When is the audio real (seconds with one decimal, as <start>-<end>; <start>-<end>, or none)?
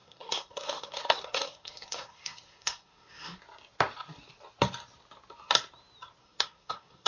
3.4-6.2